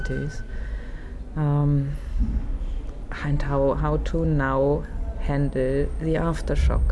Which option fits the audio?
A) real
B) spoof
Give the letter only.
A